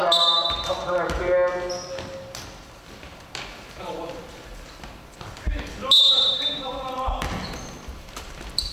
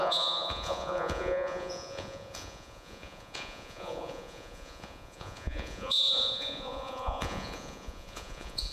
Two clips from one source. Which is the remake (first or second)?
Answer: second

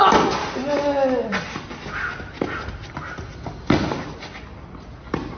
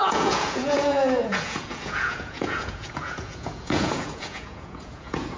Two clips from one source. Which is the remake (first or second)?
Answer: second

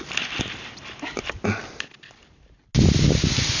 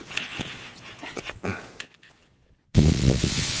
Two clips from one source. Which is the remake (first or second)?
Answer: second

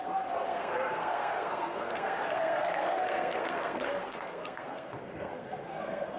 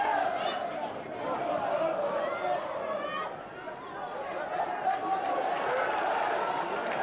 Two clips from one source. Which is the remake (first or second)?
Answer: first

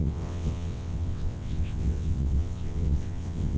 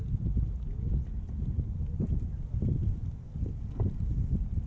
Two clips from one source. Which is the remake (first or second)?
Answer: first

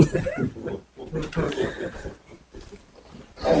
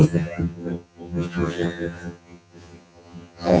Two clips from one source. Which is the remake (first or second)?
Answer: second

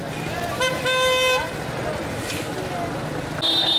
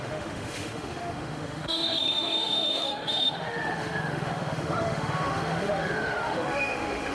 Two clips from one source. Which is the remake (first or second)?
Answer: second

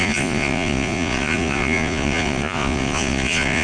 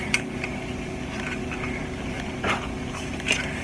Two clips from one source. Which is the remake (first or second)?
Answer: first